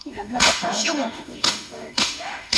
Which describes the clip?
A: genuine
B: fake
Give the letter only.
B